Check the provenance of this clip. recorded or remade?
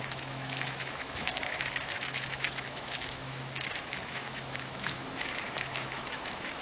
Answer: remade